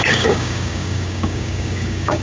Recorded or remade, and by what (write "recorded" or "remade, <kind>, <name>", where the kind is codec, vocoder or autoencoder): remade, codec, DAC